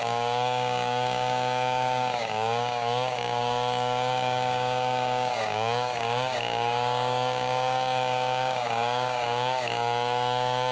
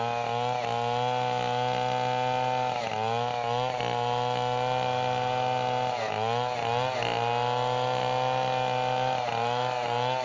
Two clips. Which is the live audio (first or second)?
second